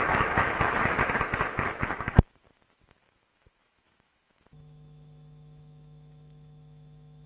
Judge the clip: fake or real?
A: fake